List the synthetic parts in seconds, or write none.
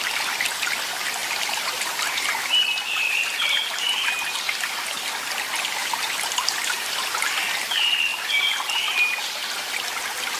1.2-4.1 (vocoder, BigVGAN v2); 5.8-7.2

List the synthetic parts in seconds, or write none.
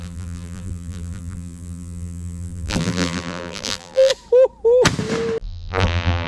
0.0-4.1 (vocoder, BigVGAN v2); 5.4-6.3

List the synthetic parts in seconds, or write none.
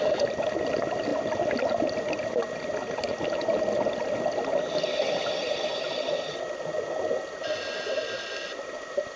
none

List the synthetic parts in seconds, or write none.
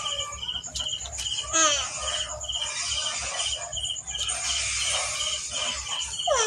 3.0-4.3 (vocoder, BigVGAN v2)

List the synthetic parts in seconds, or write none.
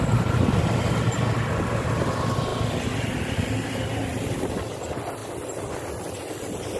none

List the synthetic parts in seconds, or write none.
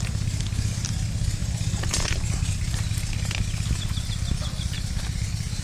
1.4-2.9 (vocoder, BigVGAN v2)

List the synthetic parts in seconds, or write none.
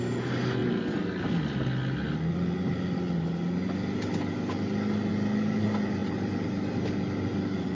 none